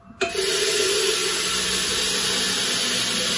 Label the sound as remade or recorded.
recorded